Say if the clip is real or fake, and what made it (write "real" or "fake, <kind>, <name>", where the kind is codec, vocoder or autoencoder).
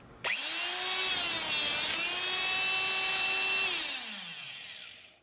real